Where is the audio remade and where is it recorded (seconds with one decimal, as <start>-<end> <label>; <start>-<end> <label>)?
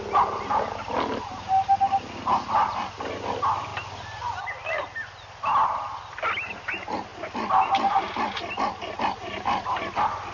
0.0-10.3 recorded